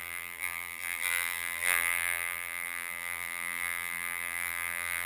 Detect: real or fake fake